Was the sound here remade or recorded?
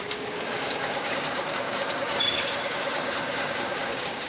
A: remade